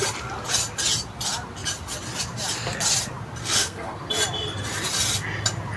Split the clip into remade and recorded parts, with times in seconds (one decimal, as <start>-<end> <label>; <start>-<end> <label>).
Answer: 0.0-3.4 recorded; 3.4-4.0 remade; 4.0-5.8 recorded